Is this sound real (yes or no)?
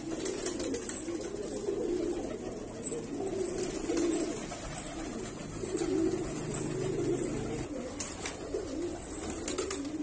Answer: yes